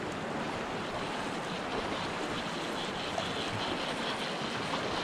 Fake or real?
real